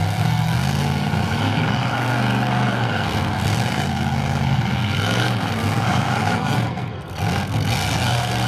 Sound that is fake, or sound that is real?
fake